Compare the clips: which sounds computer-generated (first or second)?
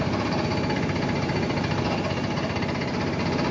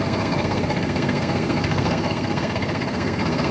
second